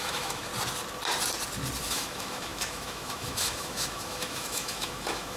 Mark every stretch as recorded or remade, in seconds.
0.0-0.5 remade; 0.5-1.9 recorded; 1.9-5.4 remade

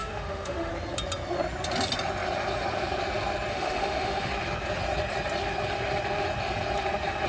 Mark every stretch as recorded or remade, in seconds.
0.0-0.7 remade; 0.7-3.5 recorded; 3.5-4.3 remade; 4.3-7.3 recorded

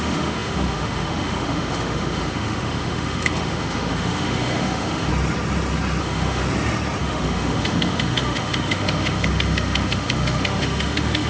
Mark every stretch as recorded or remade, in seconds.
0.0-5.1 remade; 5.1-6.0 recorded; 6.0-6.4 remade; 6.4-7.0 recorded; 7.0-11.3 remade

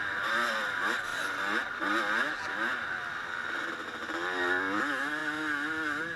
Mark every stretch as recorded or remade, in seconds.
0.0-6.2 recorded

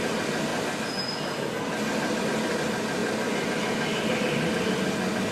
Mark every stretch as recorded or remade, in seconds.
0.0-5.3 recorded

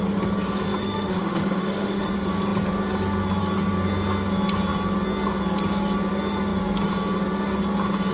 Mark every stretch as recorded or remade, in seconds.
0.0-0.8 recorded; 0.8-2.1 remade; 2.1-8.1 recorded

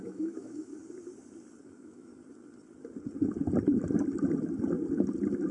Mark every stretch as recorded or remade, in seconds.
0.0-0.7 remade; 0.7-1.6 recorded; 1.6-2.1 remade; 2.1-5.5 recorded